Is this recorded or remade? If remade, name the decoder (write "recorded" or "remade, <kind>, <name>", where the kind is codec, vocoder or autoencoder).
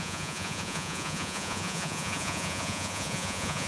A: remade, vocoder, Vocos